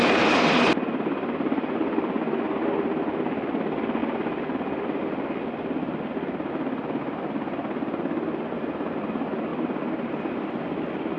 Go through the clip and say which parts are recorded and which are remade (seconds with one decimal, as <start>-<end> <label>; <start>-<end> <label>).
0.0-11.2 recorded